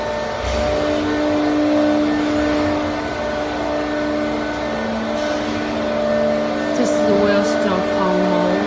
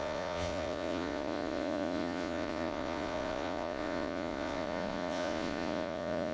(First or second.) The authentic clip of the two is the first